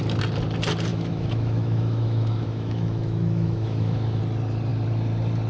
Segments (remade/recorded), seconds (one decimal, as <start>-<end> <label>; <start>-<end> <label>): 0.0-0.9 recorded; 0.9-4.2 remade; 4.2-5.5 recorded